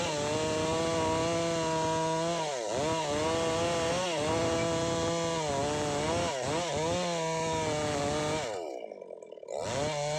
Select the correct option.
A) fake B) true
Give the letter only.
B